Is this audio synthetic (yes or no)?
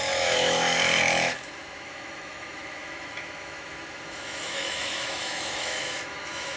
yes